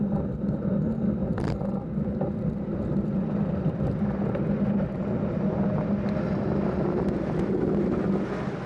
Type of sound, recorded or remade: recorded